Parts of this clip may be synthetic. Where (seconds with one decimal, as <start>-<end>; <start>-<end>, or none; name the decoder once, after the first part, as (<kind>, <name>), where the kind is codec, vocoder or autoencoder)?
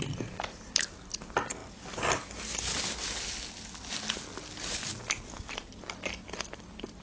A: none